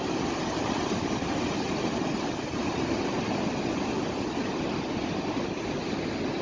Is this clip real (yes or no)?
yes